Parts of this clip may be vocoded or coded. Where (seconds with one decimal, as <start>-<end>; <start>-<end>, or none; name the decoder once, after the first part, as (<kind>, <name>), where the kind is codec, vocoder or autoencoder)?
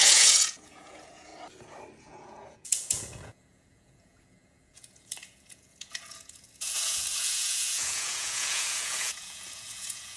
0.0-1.3 (vocoder, Vocos); 2.0-10.2